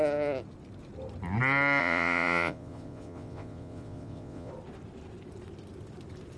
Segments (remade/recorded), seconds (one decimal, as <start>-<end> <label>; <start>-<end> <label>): 0.0-1.8 recorded; 1.8-4.5 remade; 4.5-6.4 recorded